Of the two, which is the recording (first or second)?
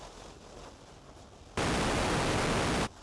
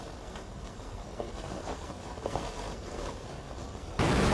first